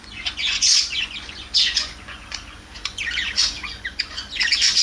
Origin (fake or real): fake